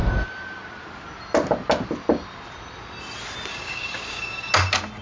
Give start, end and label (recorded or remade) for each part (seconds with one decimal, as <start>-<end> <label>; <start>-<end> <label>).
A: 0.0-3.5 recorded; 3.5-4.5 remade; 4.5-5.0 recorded